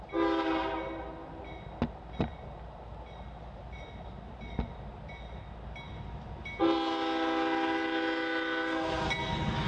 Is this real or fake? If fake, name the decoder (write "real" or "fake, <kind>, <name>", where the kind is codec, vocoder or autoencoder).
real